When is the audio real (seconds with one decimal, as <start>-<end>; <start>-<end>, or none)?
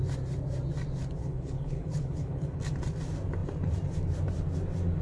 0.0-1.2; 2.6-5.0